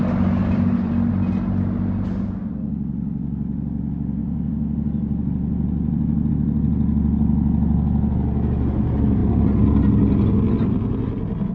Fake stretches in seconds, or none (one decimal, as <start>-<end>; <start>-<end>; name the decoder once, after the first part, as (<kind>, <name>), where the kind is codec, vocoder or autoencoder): 0.4-1.1 (vocoder, BigVGAN v2)